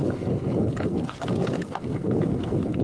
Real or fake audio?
fake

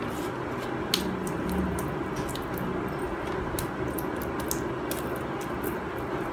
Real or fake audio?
real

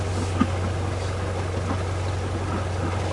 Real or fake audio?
real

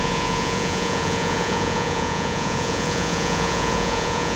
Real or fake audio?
fake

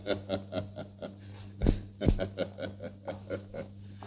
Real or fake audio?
real